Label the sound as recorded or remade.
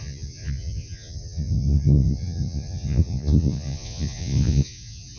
remade